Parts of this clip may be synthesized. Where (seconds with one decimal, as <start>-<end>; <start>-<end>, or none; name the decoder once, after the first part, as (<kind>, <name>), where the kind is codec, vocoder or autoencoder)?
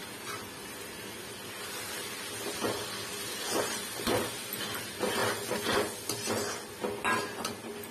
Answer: none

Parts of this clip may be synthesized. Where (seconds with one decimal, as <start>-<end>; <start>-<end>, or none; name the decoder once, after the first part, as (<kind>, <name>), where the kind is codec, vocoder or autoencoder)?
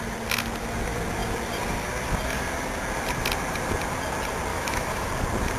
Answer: 4.5-5.1 (autoencoder, DAC-VAE)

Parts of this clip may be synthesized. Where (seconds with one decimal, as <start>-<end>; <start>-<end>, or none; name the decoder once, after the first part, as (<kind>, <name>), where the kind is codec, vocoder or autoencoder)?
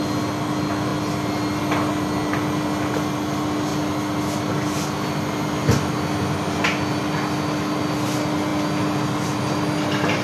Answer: none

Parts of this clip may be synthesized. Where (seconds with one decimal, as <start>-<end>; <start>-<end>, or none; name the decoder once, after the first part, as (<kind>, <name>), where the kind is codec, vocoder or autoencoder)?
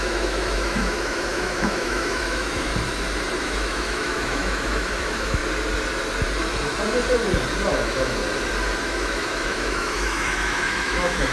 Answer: 0.0-2.7 (autoencoder, DAC-VAE); 3.4-5.4; 7.7-8.2; 8.8-11.3